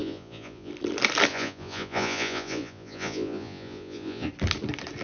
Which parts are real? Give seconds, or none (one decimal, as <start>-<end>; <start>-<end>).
0.7-1.3; 4.3-5.0